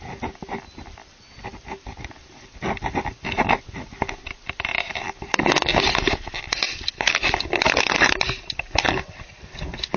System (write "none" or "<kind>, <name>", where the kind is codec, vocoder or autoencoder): none